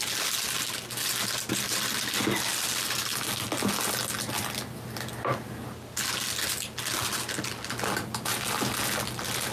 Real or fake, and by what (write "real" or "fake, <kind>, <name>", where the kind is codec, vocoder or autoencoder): real